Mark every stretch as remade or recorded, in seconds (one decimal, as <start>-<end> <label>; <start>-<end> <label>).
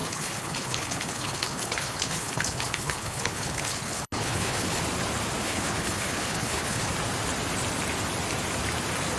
0.0-4.8 remade; 4.8-5.4 recorded; 5.4-6.9 remade; 6.9-9.2 recorded